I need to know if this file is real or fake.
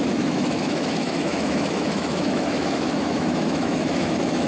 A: fake